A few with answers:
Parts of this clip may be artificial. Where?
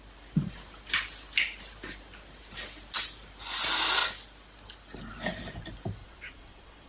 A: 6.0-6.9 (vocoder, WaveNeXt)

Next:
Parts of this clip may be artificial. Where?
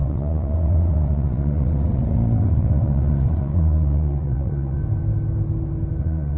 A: 0.0-4.8 (vocoder, WaveNeXt); 6.0-6.4